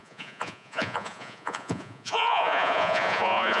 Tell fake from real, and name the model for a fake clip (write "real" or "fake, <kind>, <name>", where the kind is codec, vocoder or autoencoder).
fake, vocoder, Vocos